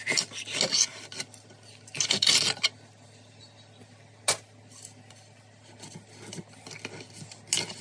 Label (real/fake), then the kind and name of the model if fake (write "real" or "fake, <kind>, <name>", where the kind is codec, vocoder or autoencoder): real